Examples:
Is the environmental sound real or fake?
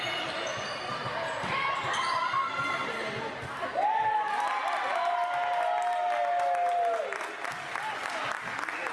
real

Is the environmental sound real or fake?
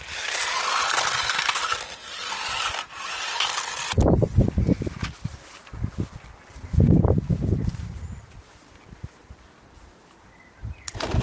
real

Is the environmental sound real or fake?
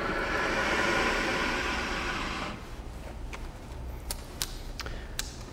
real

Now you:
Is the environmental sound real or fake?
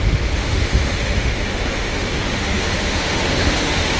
fake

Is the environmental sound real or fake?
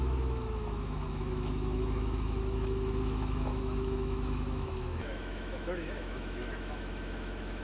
fake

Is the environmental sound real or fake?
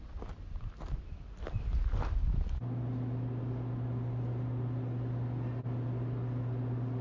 real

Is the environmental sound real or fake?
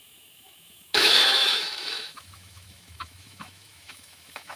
fake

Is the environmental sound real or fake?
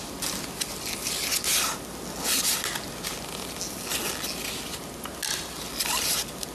real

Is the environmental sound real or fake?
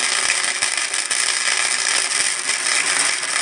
real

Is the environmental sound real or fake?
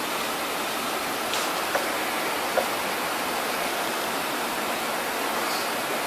real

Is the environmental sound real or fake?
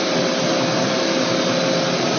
real